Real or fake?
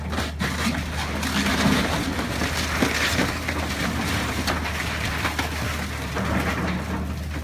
real